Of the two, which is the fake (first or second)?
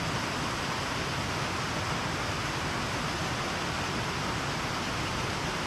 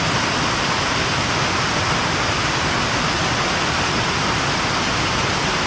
second